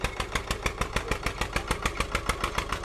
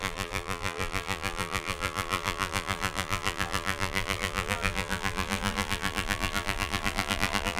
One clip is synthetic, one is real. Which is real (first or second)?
first